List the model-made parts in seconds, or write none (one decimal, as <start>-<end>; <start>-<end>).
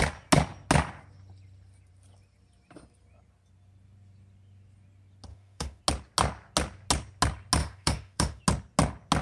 5.3-5.8; 7.6-8.4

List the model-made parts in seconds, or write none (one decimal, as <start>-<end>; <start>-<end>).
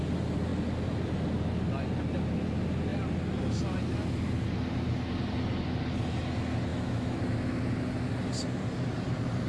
6.7-7.2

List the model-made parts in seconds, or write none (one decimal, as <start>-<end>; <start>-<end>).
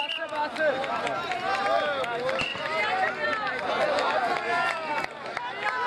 none